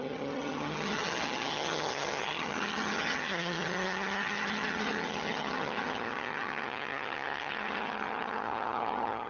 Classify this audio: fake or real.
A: fake